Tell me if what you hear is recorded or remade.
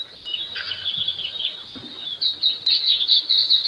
recorded